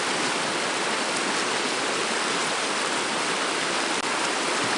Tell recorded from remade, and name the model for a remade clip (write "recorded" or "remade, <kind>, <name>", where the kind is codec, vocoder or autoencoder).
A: recorded